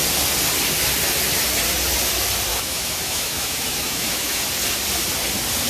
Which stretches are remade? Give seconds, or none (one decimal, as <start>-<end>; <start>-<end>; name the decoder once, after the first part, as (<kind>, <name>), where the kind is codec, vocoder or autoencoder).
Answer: 2.5-4.4 (autoencoder, DAC-VAE)